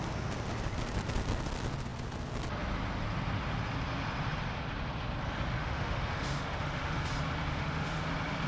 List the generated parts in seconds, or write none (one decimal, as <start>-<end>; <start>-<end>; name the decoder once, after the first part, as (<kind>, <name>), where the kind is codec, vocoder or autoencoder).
5.6-7.1 (autoencoder, DAC-VAE); 7.5-8.1

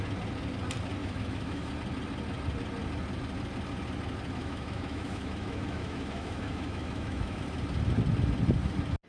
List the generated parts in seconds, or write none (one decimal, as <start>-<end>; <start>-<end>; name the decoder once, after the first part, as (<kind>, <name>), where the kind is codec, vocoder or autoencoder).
1.0-1.7 (autoencoder, DAC-VAE); 4.4-7.4